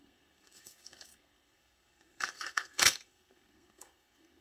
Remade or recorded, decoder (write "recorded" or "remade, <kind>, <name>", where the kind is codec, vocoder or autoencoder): remade, codec, SNAC